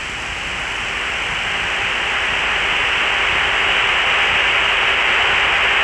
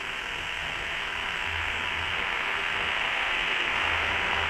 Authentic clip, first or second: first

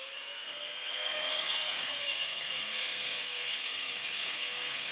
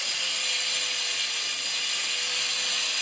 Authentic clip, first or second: second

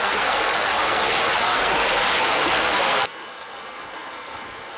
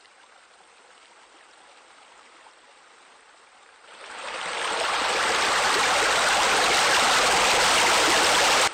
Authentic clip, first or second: second